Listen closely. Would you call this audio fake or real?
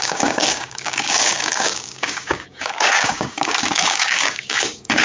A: fake